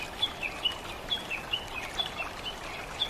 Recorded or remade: recorded